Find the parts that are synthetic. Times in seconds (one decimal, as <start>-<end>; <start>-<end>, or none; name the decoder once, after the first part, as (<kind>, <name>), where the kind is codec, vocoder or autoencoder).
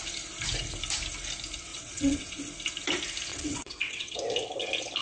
1.7-2.4 (vocoder, WaveNeXt); 3.3-4.2